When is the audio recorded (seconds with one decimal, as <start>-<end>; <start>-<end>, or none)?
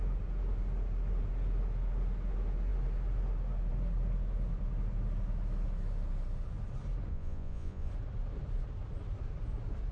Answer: 0.0-7.1; 7.9-9.9